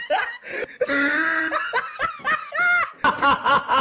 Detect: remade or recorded recorded